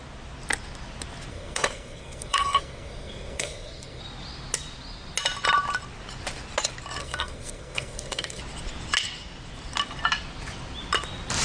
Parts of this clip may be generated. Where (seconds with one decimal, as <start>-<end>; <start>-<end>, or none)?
1.3-4.0; 7.0-8.4